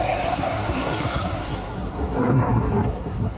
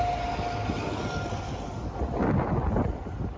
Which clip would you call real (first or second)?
second